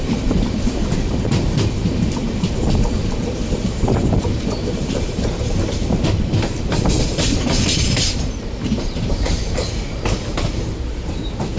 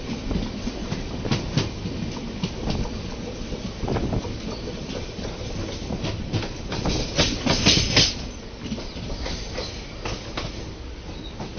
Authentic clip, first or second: second